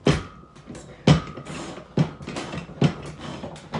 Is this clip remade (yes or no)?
no